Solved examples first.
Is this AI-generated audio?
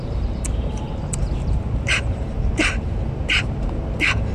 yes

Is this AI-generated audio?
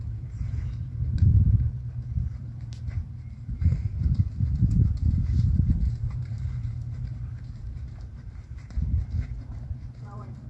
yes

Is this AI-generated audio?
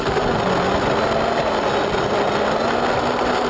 no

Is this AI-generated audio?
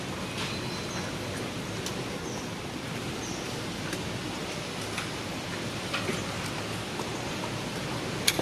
no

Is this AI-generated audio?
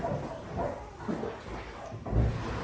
no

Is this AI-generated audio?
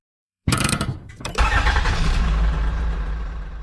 yes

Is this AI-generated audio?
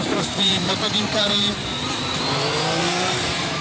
yes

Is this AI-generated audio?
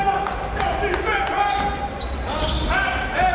no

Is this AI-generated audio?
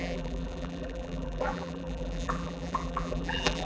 yes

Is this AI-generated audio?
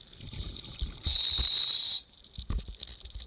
no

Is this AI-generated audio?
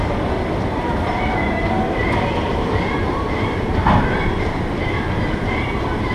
yes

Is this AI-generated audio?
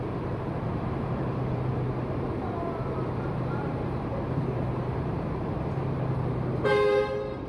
yes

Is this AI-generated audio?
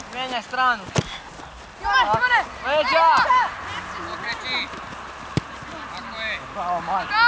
no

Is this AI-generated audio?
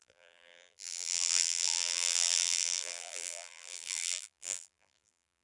yes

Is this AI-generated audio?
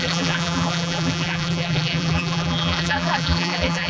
yes